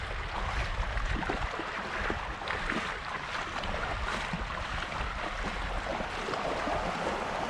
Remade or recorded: recorded